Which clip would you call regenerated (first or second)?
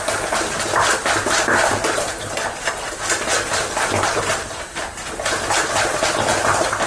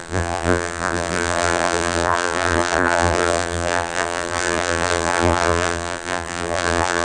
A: second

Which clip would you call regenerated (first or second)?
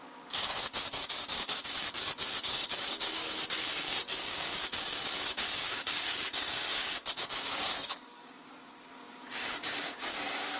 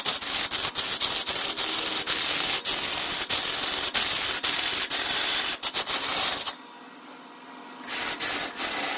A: first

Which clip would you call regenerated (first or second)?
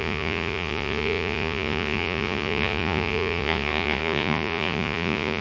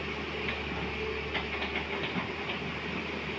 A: first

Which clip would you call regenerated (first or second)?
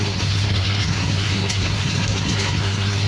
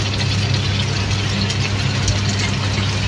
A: first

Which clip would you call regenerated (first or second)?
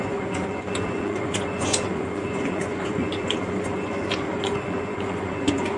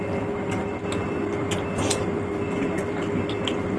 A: first